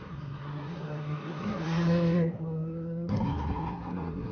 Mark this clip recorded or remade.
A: remade